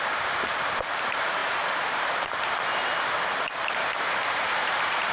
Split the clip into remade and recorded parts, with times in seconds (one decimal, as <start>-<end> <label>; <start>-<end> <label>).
0.0-5.1 remade